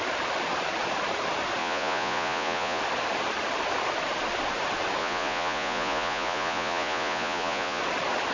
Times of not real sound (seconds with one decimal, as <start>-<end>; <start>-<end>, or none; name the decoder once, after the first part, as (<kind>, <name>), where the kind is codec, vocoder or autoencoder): 1.6-2.8 (vocoder, Vocos); 5.0-7.8

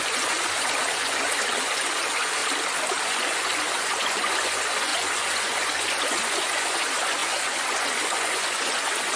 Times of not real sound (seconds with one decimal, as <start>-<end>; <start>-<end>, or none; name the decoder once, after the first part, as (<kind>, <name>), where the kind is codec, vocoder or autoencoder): 0.0-2.4 (vocoder, Vocos); 3.0-9.2

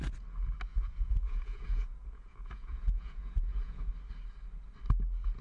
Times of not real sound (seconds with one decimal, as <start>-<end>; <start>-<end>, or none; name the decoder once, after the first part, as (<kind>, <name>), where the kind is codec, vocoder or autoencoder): 0.7-3.9 (vocoder, Vocos)

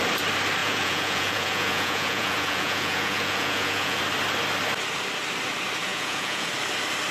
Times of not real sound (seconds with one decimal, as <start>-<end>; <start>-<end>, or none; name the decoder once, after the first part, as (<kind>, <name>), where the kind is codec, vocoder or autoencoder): 0.6-4.0 (vocoder, Vocos); 5.9-6.5

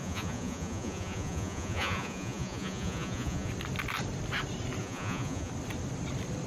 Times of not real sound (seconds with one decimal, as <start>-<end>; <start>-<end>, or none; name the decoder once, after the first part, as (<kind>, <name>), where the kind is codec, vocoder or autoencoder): 0.0-3.5 (vocoder, Vocos); 4.8-5.5

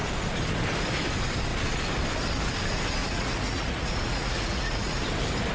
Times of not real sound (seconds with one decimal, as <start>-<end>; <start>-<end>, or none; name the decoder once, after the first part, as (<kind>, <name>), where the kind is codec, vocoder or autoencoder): 3.0-5.0 (vocoder, Vocos)